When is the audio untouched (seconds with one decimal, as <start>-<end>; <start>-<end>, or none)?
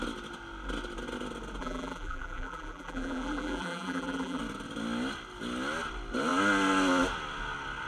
0.0-1.6; 4.4-7.9